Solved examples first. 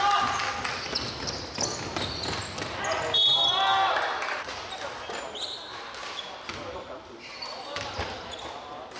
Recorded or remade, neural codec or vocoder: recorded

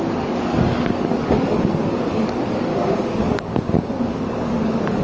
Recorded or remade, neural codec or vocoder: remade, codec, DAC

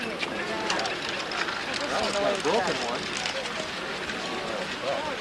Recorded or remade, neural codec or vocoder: recorded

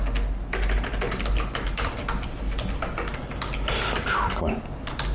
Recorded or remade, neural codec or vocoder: recorded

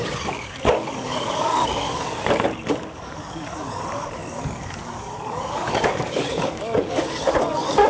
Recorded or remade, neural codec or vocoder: remade, codec, DAC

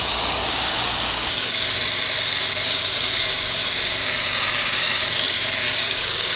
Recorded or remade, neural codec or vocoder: remade, codec, DAC